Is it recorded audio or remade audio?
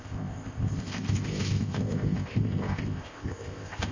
remade